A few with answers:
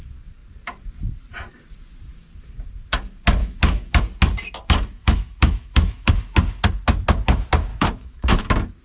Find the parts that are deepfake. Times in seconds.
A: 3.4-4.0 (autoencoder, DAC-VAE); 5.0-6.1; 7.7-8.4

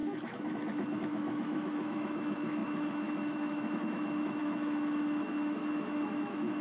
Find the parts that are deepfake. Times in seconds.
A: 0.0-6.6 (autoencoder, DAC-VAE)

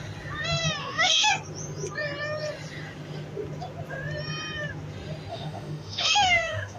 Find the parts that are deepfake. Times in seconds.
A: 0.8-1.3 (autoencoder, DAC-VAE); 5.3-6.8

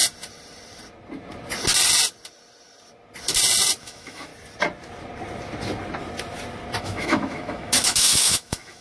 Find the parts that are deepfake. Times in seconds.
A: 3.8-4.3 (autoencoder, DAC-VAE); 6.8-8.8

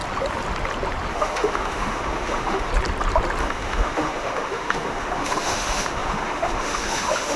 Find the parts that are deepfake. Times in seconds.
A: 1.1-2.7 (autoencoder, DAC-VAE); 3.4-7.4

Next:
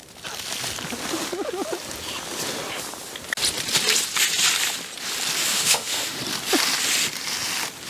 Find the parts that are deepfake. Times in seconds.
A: 5.5-6.2 (autoencoder, DAC-VAE)

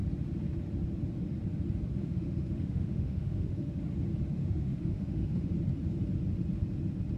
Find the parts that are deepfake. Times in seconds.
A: 2.0-3.8 (autoencoder, DAC-VAE); 4.4-5.5

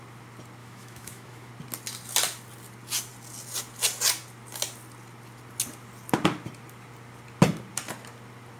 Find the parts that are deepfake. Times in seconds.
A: 0.6-1.5 (autoencoder, DAC-VAE)